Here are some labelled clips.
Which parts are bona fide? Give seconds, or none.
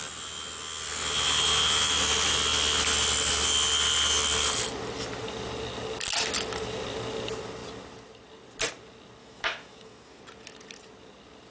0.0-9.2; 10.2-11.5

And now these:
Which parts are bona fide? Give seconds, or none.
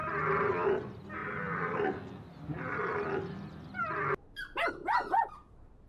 0.0-5.9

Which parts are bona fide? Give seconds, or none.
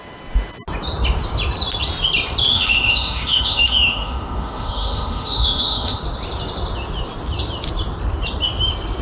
0.0-2.5; 6.0-9.0